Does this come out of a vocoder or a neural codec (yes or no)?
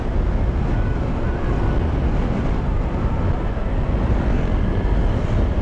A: no